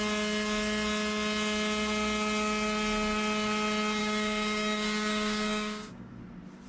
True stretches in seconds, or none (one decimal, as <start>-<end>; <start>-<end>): 0.0-4.0; 6.1-6.7